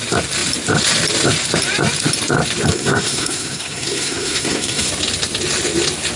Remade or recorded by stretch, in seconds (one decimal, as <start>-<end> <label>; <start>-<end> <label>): 0.0-2.7 recorded; 2.7-4.9 remade; 4.9-6.2 recorded